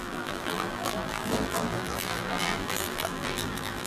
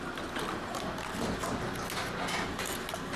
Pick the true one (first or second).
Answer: second